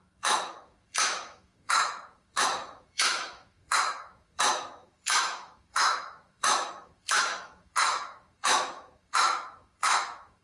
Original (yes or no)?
no